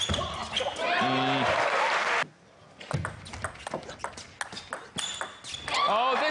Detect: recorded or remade recorded